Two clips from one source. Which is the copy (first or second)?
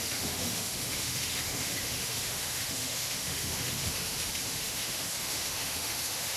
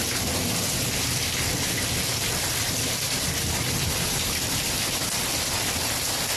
first